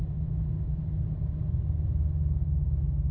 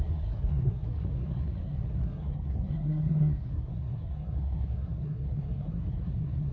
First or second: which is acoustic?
first